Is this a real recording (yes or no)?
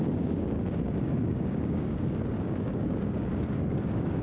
no